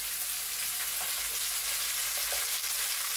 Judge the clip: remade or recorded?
recorded